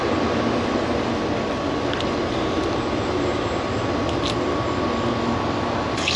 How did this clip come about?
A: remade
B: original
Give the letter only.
B